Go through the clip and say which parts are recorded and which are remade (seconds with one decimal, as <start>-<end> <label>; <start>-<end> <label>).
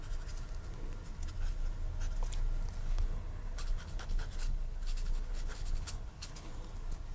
0.0-2.8 recorded; 2.8-6.5 remade; 6.5-7.1 recorded